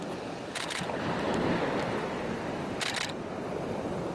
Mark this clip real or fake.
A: real